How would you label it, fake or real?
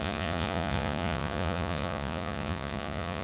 fake